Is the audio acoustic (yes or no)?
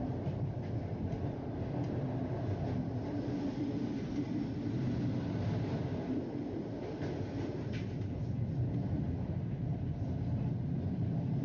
yes